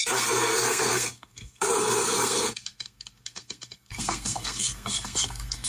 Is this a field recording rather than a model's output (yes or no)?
no